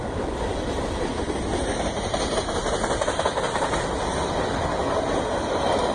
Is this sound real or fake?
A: real